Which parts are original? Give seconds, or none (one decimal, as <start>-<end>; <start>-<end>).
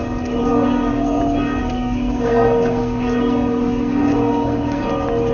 0.0-0.4; 1.2-1.6; 4.8-5.3